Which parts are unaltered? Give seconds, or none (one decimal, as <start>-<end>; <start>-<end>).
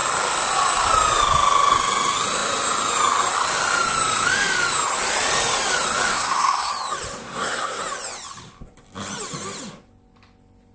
0.0-6.1; 6.7-7.2; 7.8-10.7